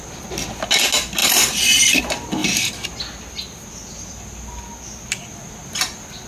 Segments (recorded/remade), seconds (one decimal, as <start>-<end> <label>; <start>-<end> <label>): 0.0-6.3 recorded